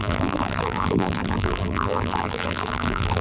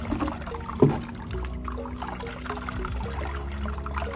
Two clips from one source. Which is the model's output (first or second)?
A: first